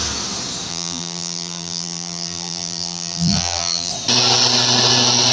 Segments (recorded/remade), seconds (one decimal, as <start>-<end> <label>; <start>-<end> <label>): 0.0-0.7 recorded; 0.7-3.9 remade; 3.9-5.3 recorded